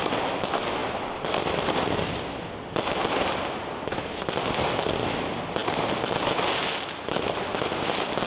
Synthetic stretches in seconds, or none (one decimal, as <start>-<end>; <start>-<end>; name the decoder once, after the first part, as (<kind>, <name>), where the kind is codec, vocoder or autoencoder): 0.8-1.7 (vocoder, BigVGAN v2)

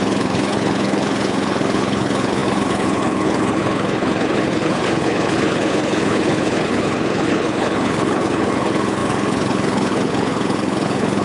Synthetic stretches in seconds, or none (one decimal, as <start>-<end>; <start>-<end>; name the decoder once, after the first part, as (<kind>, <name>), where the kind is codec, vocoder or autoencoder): 0.0-11.2 (codec, HILCodec)

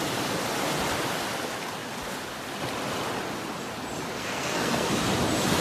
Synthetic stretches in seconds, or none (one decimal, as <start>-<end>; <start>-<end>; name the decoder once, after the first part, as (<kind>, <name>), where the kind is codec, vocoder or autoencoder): 4.1-4.9 (codec, SNAC)

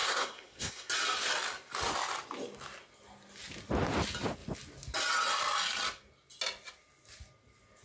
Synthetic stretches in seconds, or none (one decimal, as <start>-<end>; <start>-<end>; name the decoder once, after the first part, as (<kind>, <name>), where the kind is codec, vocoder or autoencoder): 0.0-0.9 (codec, SNAC)

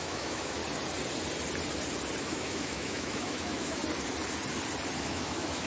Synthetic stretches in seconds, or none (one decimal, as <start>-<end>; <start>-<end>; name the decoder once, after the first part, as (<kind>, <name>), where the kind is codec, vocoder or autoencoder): 0.0-0.6 (autoencoder, DAC-VAE); 2.2-3.8; 5.0-5.7

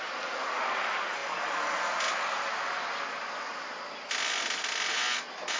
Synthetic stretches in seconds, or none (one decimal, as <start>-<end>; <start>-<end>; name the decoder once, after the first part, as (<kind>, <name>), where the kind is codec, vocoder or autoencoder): none